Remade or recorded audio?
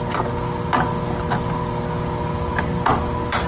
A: recorded